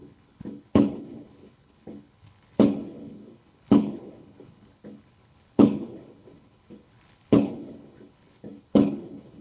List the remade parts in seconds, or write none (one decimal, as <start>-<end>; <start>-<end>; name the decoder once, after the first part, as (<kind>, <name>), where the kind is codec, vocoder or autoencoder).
0.0-9.4 (codec, HILCodec)